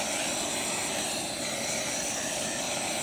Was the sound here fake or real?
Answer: real